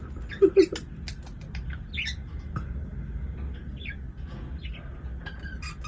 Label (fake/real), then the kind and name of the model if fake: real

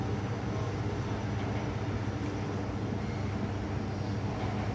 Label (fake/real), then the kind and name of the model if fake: real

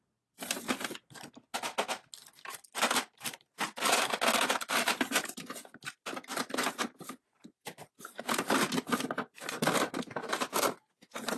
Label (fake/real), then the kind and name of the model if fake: real